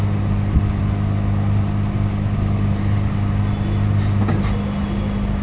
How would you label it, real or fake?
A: real